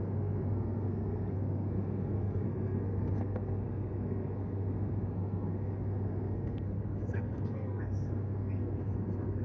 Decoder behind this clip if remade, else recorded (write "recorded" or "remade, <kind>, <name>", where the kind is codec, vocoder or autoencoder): remade, codec, SNAC